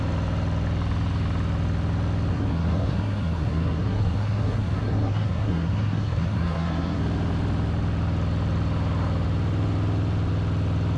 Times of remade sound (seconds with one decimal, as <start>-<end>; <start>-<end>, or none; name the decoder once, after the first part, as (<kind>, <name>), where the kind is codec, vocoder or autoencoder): 2.3-7.0 (codec, SNAC)